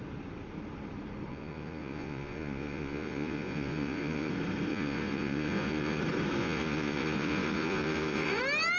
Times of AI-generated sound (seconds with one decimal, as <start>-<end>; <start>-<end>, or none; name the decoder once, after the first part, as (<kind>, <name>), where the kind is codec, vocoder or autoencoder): 1.3-4.3 (vocoder, Vocos); 4.7-6.0; 6.4-8.4